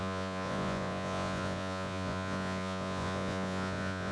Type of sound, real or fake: fake